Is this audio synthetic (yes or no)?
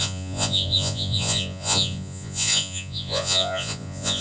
yes